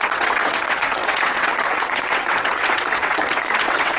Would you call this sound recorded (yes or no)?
no